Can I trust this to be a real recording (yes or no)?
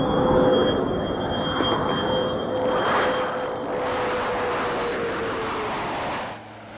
yes